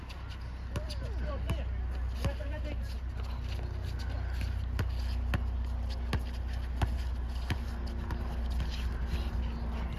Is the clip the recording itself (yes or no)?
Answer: yes